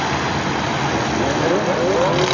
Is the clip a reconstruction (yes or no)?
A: no